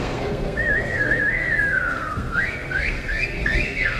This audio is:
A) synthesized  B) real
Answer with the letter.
A